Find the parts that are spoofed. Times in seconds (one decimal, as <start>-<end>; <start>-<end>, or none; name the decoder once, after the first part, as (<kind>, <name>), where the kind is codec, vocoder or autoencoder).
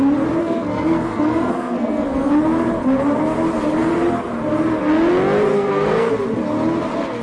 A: 0.4-2.3 (codec, SNAC); 5.5-6.1